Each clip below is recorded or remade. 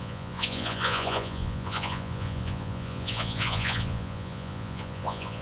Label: remade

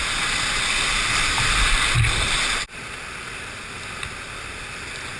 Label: recorded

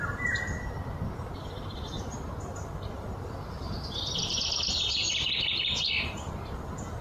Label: recorded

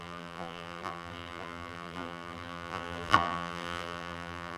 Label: remade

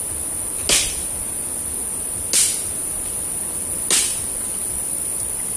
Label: recorded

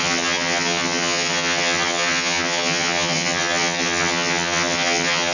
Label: remade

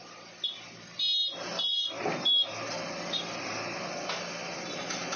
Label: recorded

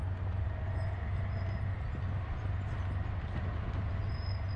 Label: recorded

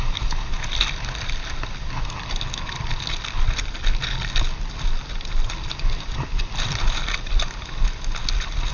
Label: recorded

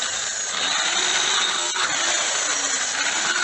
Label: recorded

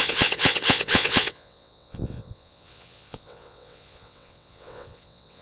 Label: remade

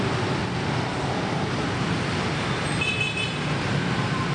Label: recorded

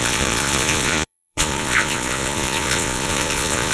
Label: remade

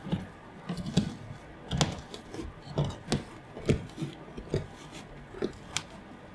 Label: recorded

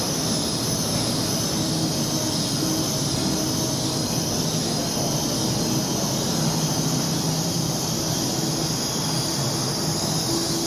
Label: recorded